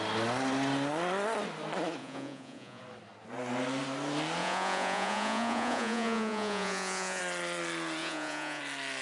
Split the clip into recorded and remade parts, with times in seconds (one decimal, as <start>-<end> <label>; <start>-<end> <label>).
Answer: 0.0-2.0 recorded; 2.0-2.8 remade; 2.8-4.4 recorded; 4.4-7.2 remade; 7.2-8.0 recorded; 8.0-8.6 remade; 8.6-9.0 recorded